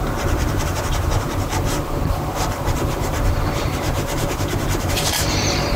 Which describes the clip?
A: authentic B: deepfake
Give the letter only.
B